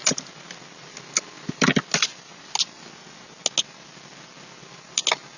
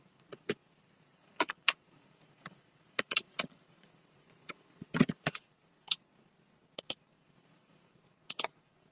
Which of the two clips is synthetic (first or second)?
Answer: second